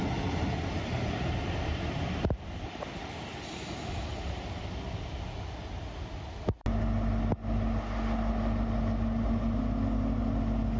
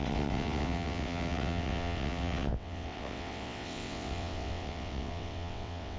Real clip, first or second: first